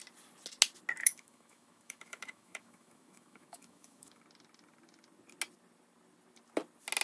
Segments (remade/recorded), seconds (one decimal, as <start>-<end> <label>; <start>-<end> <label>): 0.0-1.0 recorded; 1.0-4.2 remade; 4.2-7.0 recorded

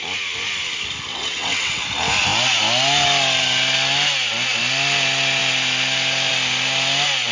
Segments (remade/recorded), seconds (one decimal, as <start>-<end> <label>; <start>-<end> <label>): 0.0-1.1 recorded; 1.1-1.8 remade; 1.8-7.3 recorded

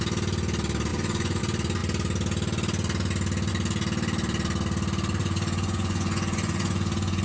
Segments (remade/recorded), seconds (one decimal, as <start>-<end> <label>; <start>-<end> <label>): 0.0-0.9 recorded; 0.9-1.4 remade; 1.4-5.2 recorded; 5.2-7.2 remade

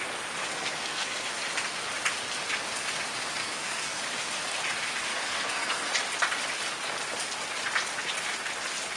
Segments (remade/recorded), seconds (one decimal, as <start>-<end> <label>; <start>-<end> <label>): 0.0-0.4 recorded; 0.4-1.3 remade; 1.3-3.4 recorded; 3.4-4.0 remade; 4.0-5.1 recorded; 5.1-5.9 remade; 5.9-9.0 recorded

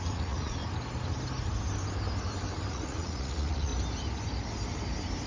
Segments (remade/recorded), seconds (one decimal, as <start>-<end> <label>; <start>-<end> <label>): 0.0-0.6 remade; 0.6-2.7 recorded; 2.7-3.7 remade; 3.7-5.3 recorded